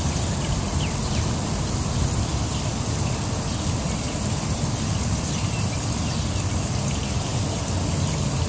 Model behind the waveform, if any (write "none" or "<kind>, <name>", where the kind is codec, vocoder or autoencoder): none